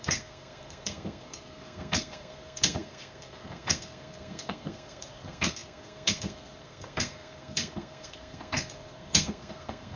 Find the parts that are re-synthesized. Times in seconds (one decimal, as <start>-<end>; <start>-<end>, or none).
0.0-10.0